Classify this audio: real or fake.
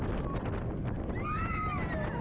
real